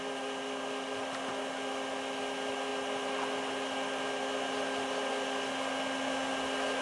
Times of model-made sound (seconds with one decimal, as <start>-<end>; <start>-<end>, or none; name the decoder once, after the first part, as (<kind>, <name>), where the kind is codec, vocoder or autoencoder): none